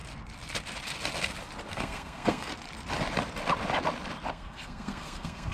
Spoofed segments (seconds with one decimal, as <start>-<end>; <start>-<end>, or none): 1.7-2.5; 4.3-5.5